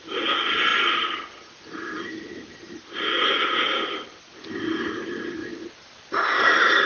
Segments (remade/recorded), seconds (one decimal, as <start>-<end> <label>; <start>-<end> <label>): 0.0-5.4 recorded; 5.4-6.9 remade